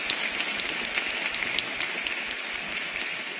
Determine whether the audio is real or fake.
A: real